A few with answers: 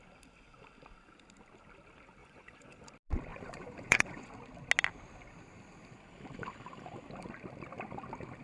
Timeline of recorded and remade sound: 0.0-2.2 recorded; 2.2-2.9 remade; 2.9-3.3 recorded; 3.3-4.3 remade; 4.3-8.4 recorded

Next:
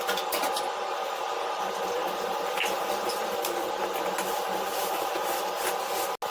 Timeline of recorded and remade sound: 0.0-4.8 recorded; 4.8-5.5 remade; 5.5-6.3 recorded

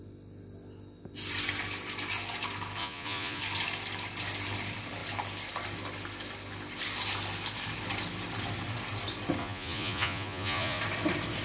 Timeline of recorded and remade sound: 0.0-2.8 recorded; 2.8-3.4 remade; 3.4-9.4 recorded; 9.4-10.8 remade; 10.8-11.4 recorded

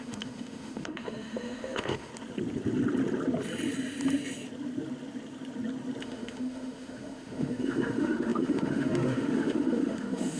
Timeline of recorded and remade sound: 0.0-2.1 remade; 2.1-6.0 recorded; 6.0-10.4 remade

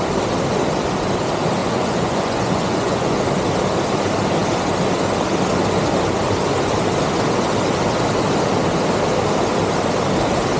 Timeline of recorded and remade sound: 0.0-1.6 recorded; 1.6-3.2 remade; 3.2-10.6 recorded

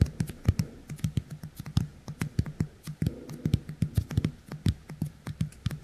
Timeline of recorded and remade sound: 0.0-5.8 recorded

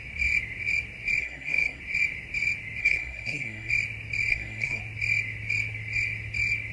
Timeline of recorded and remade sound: 0.0-1.2 recorded; 1.2-1.8 remade; 1.8-2.8 recorded; 2.8-3.7 remade; 3.7-4.3 recorded; 4.3-4.8 remade; 4.8-6.7 recorded